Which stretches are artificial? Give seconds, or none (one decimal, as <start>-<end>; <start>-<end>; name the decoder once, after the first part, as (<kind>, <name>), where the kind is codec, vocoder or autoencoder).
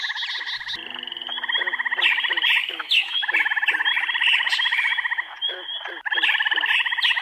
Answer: 2.6-3.1 (autoencoder, DAC-VAE)